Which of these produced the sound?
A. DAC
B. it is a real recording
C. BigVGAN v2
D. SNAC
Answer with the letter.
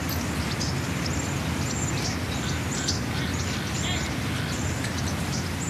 B